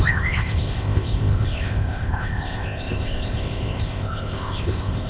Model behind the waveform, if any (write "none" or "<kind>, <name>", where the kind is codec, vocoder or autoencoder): codec, ZipCodec